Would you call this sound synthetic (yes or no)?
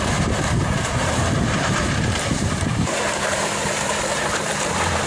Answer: yes